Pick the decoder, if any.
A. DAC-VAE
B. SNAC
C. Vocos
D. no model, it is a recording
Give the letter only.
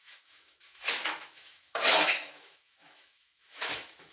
A